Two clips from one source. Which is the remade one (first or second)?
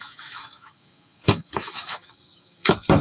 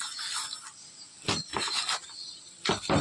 first